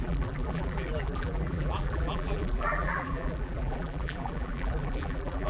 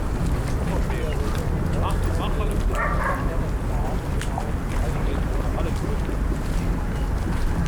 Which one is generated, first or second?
first